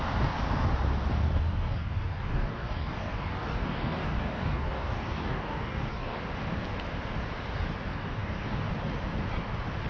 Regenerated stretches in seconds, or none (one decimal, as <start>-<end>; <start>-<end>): 1.1-6.2; 7.9-8.7